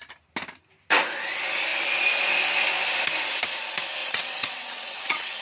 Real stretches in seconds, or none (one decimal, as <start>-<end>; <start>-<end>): 0.0-4.0